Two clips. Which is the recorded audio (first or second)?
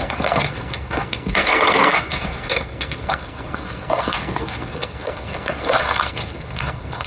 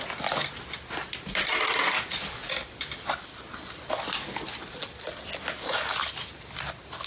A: second